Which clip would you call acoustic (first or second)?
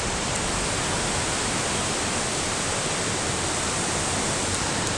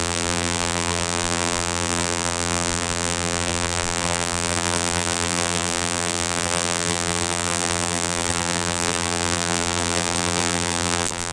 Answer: first